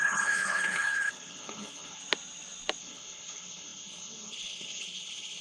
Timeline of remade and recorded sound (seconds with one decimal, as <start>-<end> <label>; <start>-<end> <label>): 0.0-2.0 remade; 2.0-2.8 recorded; 2.8-5.4 remade